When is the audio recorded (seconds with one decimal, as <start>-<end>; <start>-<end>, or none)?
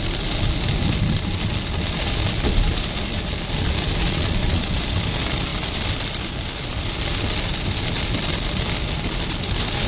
0.0-4.0; 4.7-9.9